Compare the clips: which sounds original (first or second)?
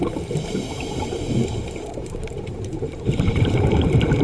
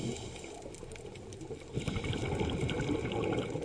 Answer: second